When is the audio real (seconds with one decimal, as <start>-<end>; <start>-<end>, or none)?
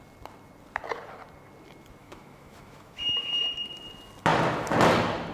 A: 0.0-2.0; 3.4-5.3